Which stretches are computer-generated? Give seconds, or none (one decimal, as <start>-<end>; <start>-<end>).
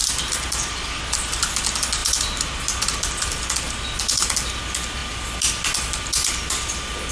none